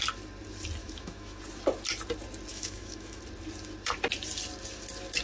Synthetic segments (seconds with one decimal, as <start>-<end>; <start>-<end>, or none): 0.8-1.4; 2.5-3.2